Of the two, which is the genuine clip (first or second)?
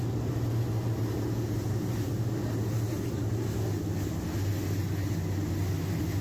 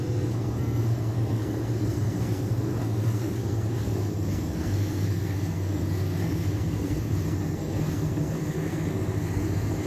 first